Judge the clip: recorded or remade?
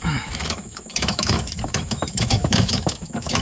remade